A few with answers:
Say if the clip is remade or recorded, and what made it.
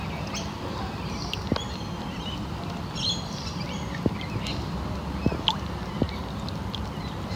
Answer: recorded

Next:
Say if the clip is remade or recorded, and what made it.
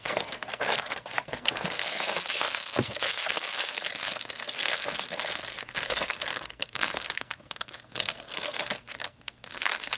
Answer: remade, codec, SNAC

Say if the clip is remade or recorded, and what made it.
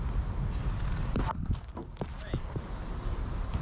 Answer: recorded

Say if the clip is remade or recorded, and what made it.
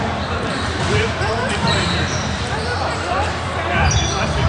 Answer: remade, vocoder, BigVGAN v2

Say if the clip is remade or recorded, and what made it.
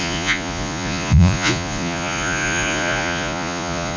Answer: remade, vocoder, Vocos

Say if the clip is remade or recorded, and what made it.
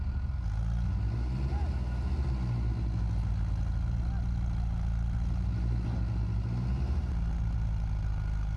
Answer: recorded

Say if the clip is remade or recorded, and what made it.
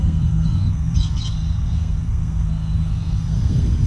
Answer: remade, codec, SNAC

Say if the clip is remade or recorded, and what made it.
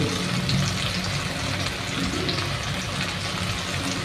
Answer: recorded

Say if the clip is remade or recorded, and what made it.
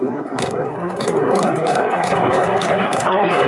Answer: remade, codec, SNAC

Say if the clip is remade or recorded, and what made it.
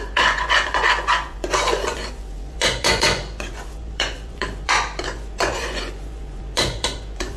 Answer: remade, vocoder, Vocos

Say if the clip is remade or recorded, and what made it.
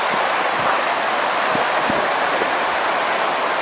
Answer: recorded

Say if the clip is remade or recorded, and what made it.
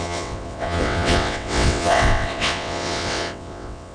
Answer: remade, vocoder, WaveNeXt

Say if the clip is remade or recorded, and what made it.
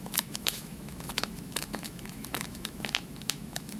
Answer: remade, autoencoder, DAC-VAE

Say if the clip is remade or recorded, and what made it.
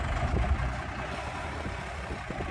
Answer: remade, vocoder, Vocos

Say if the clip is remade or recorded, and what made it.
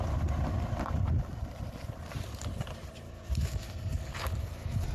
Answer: recorded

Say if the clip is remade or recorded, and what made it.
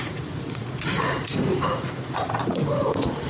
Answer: remade, vocoder, Vocos